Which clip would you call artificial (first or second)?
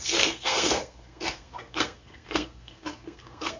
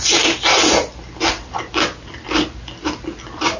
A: first